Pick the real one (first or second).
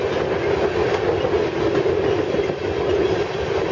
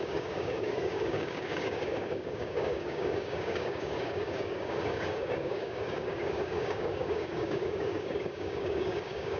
first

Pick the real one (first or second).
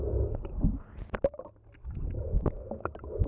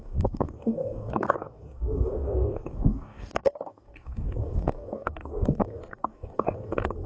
first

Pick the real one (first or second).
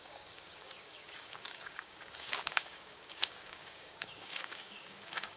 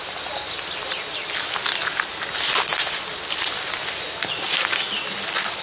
second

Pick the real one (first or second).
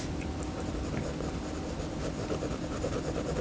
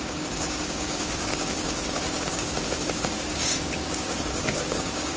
first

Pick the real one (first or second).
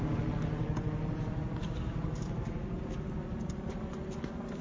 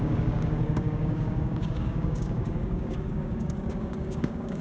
first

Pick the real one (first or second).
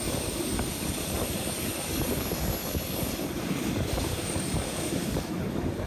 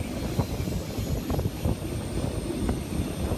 second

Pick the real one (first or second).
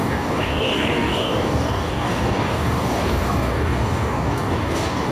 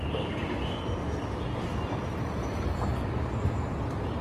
second